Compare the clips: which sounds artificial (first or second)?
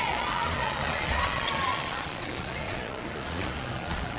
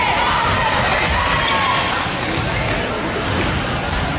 first